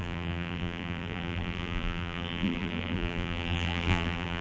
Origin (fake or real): fake